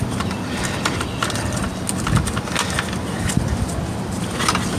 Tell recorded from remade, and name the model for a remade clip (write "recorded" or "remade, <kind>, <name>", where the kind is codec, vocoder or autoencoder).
recorded